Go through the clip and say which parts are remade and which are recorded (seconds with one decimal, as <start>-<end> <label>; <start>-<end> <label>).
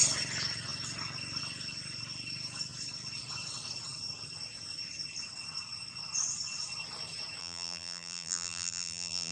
0.0-7.4 recorded; 7.4-9.3 remade